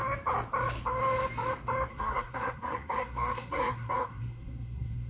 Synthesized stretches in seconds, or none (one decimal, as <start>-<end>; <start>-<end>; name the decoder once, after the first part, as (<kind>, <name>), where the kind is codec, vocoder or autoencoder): 1.9-5.1 (codec, SNAC)